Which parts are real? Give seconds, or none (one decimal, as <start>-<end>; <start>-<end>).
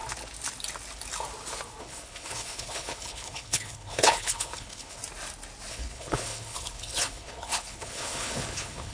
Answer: 0.0-1.8; 5.0-5.7